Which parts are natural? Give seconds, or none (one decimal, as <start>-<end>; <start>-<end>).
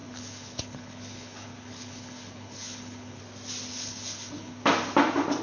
3.2-3.7; 4.6-5.4